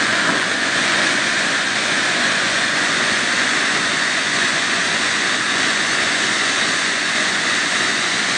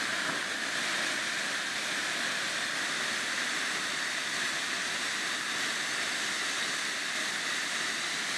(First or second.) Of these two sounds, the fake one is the first